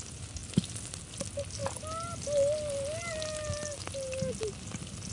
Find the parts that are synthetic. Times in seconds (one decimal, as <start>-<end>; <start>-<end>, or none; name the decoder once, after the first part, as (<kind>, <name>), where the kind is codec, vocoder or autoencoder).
none